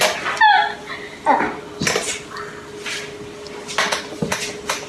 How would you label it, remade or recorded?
recorded